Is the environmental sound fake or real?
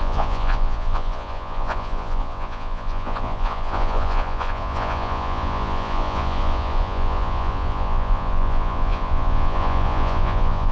fake